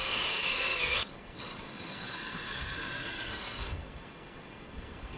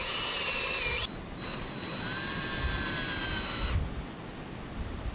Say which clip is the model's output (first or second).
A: first